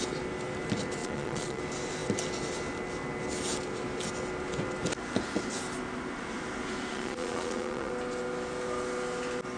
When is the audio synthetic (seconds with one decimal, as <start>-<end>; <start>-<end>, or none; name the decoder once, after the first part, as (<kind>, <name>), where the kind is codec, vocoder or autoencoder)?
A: 1.0-1.6 (vocoder, Vocos); 6.9-7.9